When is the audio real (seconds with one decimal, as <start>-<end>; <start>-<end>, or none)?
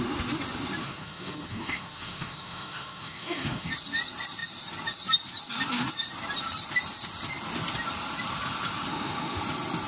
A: 0.0-0.8; 3.7-8.9; 9.4-9.9